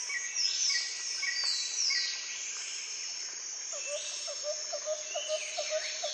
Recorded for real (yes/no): yes